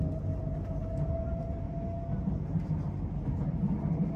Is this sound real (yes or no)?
yes